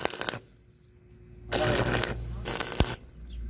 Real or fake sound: real